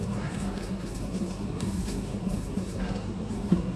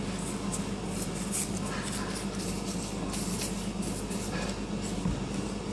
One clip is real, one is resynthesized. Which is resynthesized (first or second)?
first